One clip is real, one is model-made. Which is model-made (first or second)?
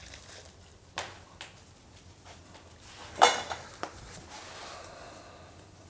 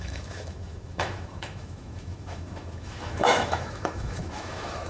second